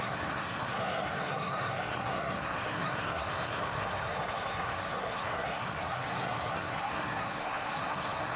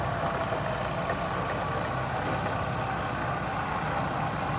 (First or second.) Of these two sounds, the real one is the second